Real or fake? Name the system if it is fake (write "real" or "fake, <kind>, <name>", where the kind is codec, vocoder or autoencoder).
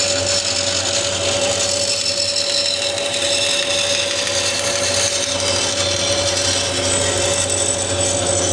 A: real